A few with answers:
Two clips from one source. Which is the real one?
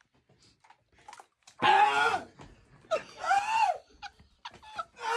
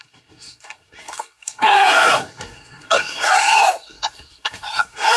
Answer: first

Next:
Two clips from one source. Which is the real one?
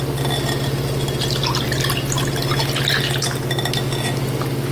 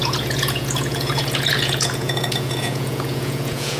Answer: first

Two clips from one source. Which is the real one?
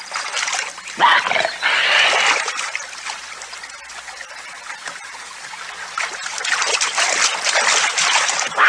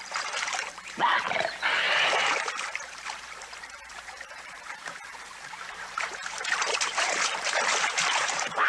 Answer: first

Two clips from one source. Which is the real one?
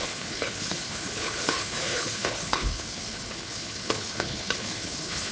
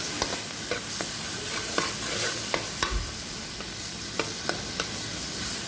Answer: second